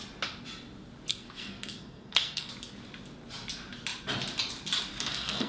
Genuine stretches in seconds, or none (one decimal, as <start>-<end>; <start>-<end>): 0.0-1.1; 2.5-4.9